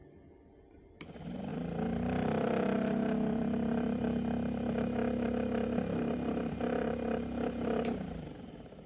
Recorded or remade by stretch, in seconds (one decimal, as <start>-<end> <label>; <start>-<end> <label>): 0.0-1.5 recorded; 1.5-8.9 remade